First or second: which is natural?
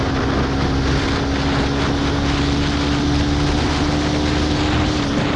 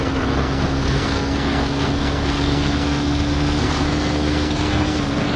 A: first